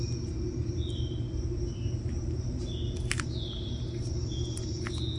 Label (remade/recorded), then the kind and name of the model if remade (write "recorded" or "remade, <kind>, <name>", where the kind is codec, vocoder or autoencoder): recorded